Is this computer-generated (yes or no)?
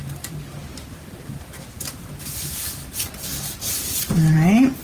no